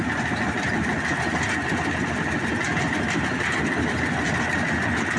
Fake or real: real